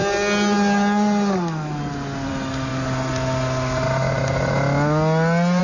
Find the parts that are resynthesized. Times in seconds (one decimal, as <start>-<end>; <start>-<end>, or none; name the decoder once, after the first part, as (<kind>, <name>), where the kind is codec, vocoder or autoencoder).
none